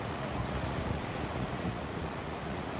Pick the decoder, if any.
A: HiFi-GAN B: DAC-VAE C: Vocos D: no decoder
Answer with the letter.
C